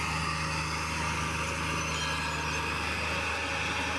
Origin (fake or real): real